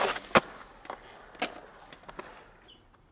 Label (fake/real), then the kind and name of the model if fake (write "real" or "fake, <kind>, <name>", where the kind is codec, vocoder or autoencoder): real